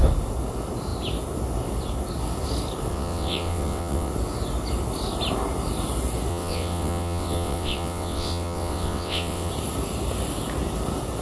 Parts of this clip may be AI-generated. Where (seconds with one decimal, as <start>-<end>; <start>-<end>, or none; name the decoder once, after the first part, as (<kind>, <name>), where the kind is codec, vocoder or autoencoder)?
2.9-4.1 (vocoder, WaveNeXt); 6.3-9.5